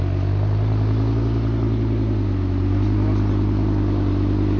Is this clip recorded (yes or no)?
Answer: yes